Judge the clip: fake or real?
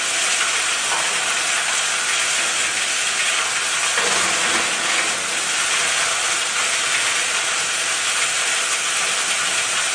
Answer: real